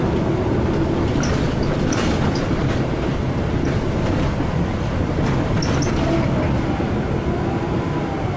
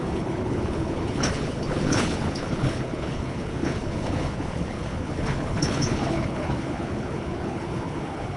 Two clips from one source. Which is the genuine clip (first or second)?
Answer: first